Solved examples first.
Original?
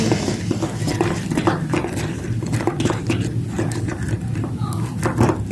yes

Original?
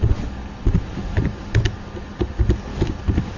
yes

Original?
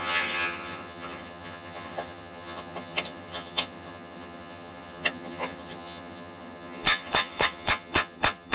no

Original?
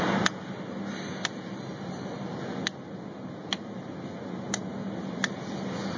yes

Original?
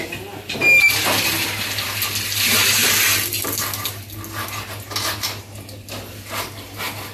yes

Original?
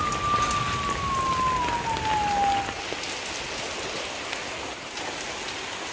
yes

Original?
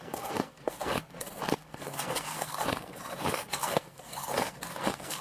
no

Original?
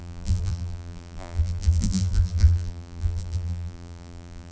no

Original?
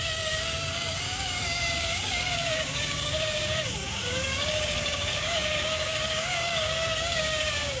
no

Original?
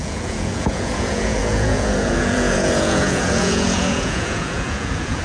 no